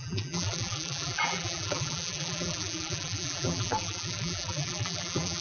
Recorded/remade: remade